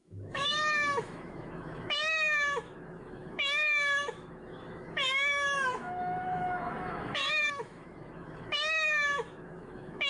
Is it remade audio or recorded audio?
remade